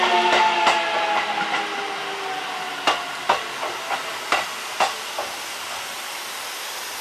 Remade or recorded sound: recorded